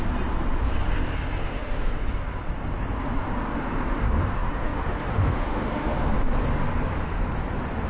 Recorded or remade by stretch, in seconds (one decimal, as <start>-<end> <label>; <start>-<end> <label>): 0.0-1.4 recorded; 1.4-2.0 remade; 2.0-3.5 recorded; 3.5-6.1 remade; 6.1-7.9 recorded